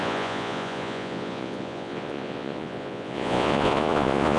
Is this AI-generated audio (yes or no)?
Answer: yes